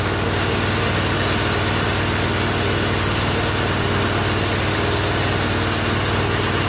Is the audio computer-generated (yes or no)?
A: no